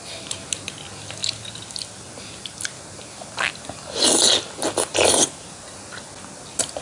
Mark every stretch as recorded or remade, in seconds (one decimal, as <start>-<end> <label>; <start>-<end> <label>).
0.0-6.8 recorded